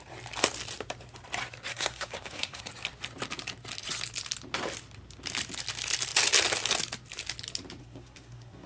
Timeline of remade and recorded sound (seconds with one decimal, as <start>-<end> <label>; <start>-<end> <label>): 0.0-1.7 recorded; 1.7-2.7 remade; 2.7-7.8 recorded; 7.8-8.7 remade